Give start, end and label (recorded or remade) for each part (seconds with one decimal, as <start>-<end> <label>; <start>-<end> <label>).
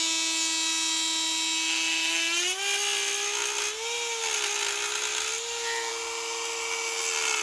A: 0.0-7.4 recorded